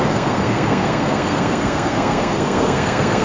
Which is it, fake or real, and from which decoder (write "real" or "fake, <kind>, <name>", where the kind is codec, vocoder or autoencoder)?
fake, codec, SNAC